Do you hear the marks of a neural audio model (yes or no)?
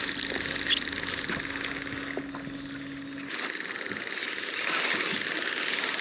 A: no